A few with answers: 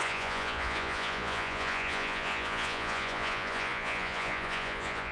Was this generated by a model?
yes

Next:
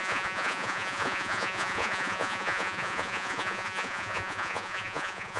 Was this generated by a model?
yes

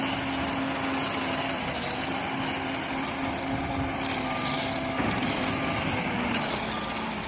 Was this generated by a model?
no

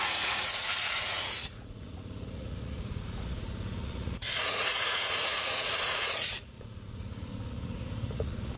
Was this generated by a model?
yes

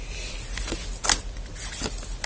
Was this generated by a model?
no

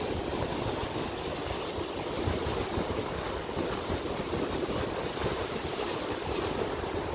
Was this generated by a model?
no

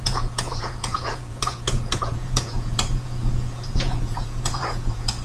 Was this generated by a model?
yes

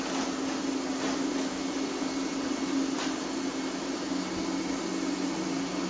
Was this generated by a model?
no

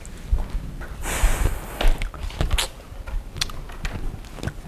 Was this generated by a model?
no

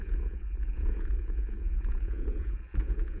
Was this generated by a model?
yes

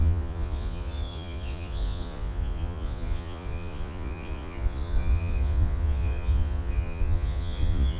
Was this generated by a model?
yes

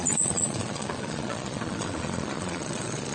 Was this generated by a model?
yes